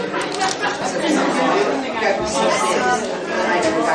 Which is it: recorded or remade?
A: recorded